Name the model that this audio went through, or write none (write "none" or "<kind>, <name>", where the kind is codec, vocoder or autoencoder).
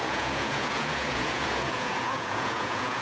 vocoder, Vocos